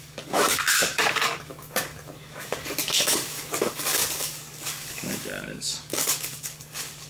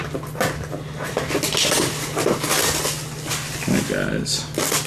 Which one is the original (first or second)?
second